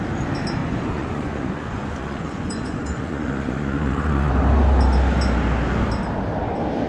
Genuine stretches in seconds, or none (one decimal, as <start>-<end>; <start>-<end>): 0.0-0.6; 4.3-6.9